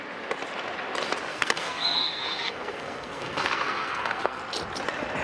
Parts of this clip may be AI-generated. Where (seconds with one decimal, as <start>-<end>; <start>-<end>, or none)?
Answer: 1.3-4.4